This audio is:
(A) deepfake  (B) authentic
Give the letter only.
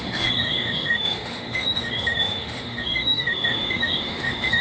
A